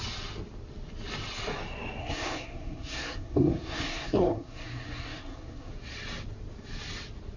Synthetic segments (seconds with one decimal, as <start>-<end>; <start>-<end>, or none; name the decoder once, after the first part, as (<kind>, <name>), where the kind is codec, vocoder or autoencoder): 2.0-5.7 (codec, SNAC)